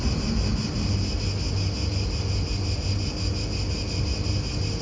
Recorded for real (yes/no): yes